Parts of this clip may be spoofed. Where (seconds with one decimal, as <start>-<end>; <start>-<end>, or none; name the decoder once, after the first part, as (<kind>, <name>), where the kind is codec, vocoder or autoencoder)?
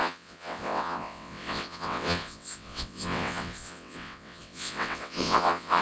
0.0-5.8 (vocoder, WaveNeXt)